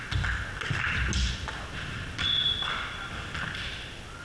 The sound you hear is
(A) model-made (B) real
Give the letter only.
B